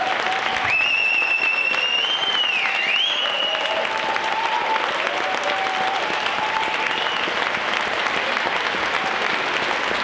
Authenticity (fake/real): real